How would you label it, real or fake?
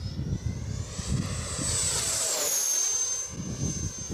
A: real